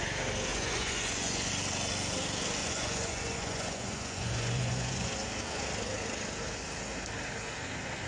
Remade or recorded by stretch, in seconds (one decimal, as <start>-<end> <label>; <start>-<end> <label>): 0.0-0.5 recorded; 0.5-1.5 remade; 1.5-2.6 recorded; 2.6-5.1 remade; 5.1-8.1 recorded